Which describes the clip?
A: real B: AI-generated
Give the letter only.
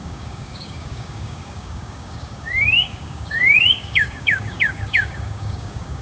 B